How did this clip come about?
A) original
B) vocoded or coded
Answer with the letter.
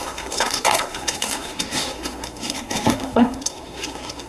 B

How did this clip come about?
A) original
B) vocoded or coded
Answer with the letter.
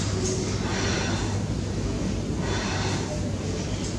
A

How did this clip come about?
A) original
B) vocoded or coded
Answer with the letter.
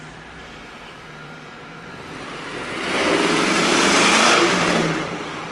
B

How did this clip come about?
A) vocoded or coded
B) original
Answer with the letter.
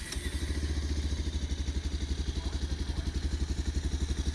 B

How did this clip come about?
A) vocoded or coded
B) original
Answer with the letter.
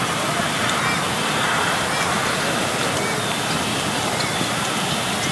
B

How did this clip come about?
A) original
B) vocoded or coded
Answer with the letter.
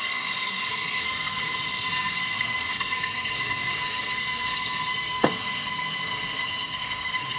B